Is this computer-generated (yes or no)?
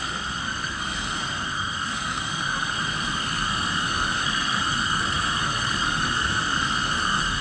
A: yes